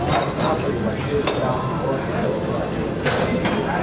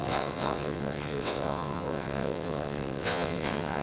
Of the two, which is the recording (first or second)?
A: first